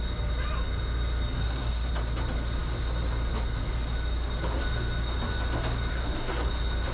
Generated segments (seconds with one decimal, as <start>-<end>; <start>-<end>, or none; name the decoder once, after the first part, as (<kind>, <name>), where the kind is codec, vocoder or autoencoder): 1.4-1.9 (codec, SNAC); 5.9-6.5

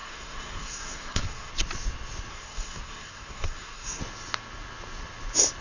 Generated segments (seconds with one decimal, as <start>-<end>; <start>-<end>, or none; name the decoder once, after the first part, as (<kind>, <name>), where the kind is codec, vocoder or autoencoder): 0.0-1.5 (codec, SNAC); 2.3-4.0

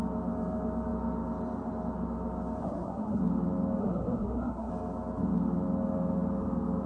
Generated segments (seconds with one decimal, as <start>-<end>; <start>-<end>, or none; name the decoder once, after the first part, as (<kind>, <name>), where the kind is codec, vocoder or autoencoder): 2.6-3.2 (codec, SNAC); 3.8-4.7